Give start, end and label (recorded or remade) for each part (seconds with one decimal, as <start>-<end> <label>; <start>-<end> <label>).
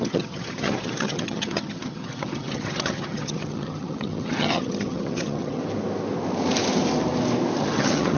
0.0-5.6 remade; 5.6-7.6 recorded; 7.6-8.2 remade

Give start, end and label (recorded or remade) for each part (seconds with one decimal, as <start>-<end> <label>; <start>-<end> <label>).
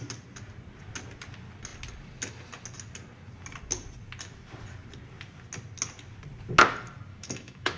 0.0-7.1 recorded; 7.1-7.8 remade